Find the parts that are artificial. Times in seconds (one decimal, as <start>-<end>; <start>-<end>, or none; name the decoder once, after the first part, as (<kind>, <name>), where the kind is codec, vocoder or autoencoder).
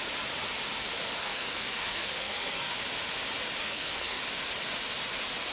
1.2-2.7 (codec, SNAC); 3.6-4.2